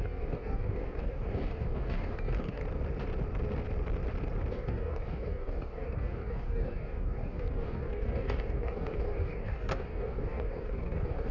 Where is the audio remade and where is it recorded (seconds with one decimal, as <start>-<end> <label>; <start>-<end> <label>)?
0.0-2.6 remade; 2.6-4.5 recorded; 4.5-11.3 remade